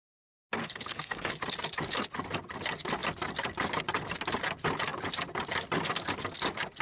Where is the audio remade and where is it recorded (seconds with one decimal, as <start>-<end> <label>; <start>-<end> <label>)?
0.0-0.6 recorded; 0.6-1.3 remade; 1.3-6.8 recorded

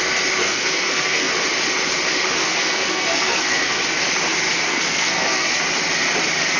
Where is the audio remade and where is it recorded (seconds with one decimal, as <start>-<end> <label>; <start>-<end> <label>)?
0.0-0.4 recorded; 0.4-1.3 remade; 1.3-2.4 recorded; 2.4-3.8 remade; 3.8-4.7 recorded; 4.7-5.5 remade; 5.5-6.6 recorded

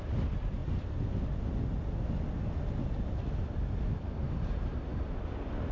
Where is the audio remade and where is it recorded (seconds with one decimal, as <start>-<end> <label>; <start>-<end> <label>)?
0.0-5.7 recorded

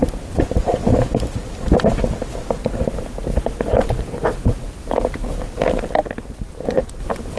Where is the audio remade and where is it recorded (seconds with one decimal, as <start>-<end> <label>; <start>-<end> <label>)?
0.0-7.4 recorded